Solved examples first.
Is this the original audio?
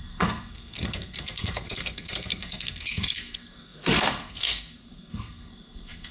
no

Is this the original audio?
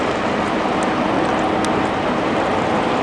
yes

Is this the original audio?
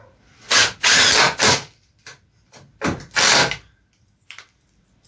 yes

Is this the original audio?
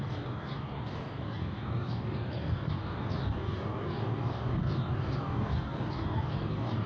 no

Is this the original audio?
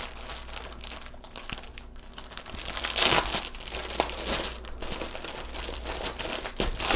yes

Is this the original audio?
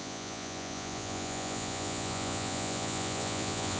no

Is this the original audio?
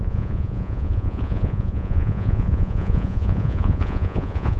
no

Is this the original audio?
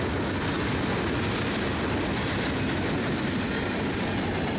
yes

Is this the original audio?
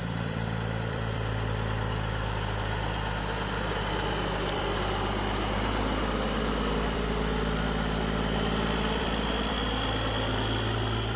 no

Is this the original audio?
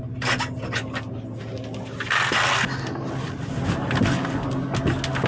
yes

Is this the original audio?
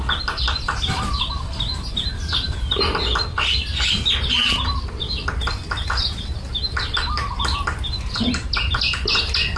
yes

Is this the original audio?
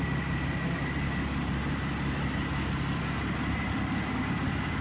yes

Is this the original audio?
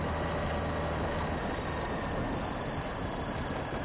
yes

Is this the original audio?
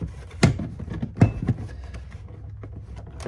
yes